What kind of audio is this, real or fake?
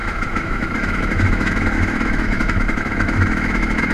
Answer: fake